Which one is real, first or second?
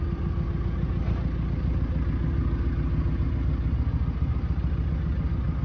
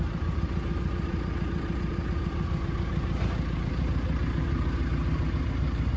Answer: first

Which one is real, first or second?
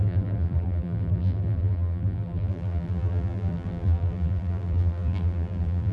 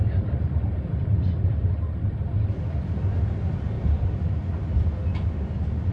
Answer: second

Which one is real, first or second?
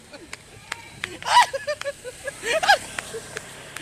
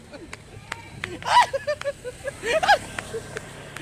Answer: second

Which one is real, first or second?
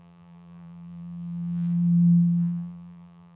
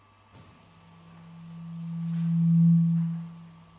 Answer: second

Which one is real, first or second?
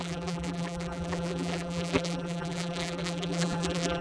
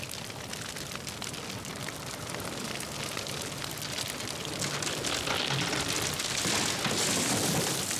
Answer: second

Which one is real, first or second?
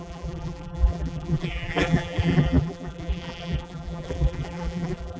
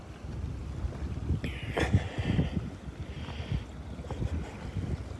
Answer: second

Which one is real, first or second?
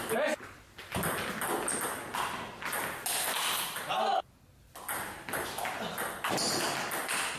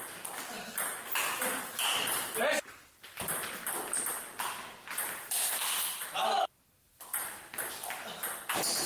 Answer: first